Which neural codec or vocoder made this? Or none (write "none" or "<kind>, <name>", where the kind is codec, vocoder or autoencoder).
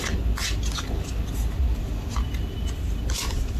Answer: none